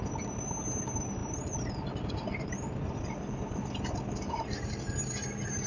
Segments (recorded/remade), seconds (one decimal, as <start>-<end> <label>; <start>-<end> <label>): 0.0-5.7 recorded